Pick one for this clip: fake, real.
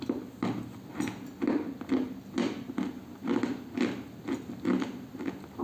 real